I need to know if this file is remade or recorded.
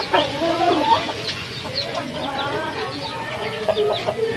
remade